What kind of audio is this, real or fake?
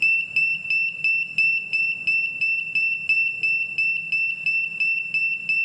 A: real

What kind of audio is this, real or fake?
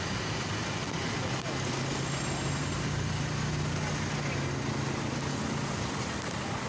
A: real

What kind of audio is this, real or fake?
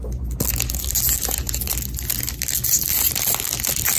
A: real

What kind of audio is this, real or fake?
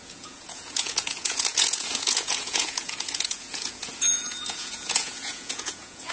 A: fake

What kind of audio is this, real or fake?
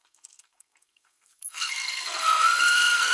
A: fake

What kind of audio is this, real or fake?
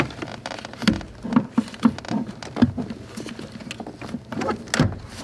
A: real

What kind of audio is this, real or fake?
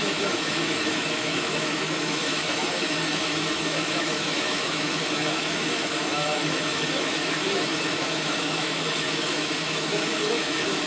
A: fake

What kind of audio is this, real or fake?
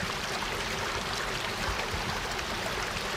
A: fake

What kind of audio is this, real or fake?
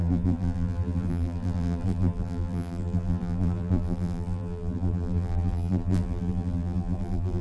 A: fake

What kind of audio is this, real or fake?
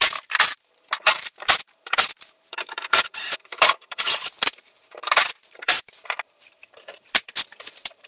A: fake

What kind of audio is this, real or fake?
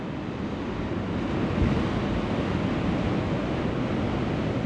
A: real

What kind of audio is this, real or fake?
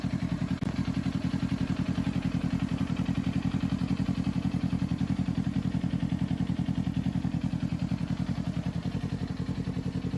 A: real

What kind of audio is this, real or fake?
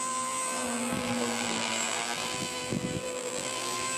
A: fake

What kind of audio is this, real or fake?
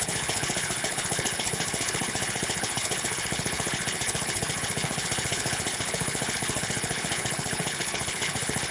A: fake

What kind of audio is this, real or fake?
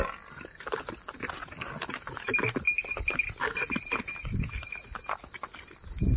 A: real